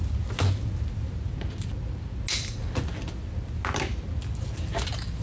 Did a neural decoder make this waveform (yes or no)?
no